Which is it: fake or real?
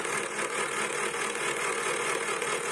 fake